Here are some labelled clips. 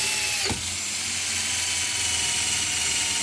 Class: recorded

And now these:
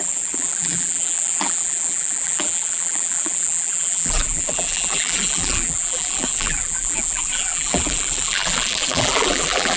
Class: remade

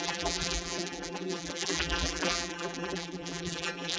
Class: remade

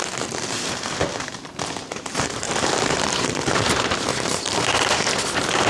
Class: remade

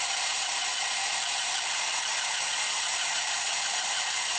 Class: remade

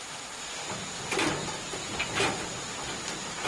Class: recorded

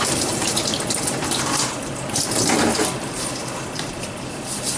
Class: remade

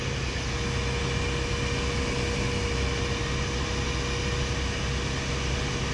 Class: recorded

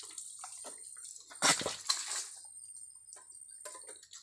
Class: recorded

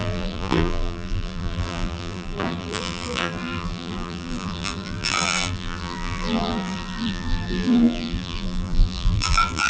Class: remade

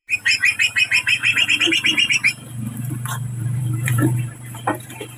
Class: remade